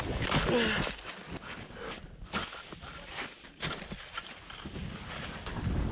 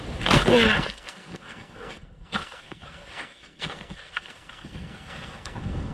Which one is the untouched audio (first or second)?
first